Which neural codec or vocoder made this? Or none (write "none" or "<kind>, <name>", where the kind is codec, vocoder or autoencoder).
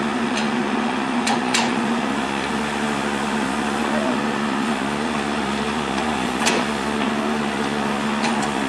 vocoder, Vocos